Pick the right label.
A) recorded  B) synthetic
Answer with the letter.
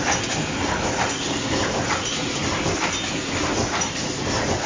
A